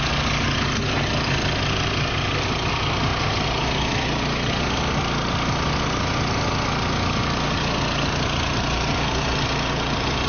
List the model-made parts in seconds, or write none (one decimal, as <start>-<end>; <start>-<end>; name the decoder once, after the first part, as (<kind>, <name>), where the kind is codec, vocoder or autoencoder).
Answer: none